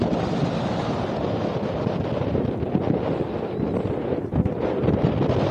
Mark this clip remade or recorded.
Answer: recorded